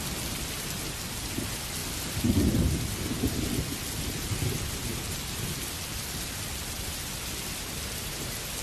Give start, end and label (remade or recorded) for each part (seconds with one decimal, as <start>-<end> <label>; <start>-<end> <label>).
0.0-8.6 recorded